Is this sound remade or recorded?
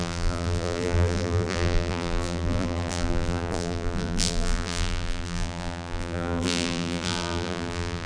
remade